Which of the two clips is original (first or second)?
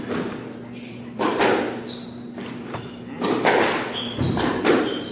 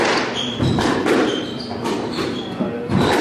first